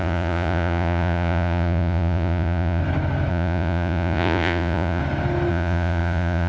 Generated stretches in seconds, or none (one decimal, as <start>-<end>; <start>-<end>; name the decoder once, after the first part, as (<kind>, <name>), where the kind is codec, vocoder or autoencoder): 0.0-2.8 (vocoder, Vocos); 3.3-5.0; 5.5-6.5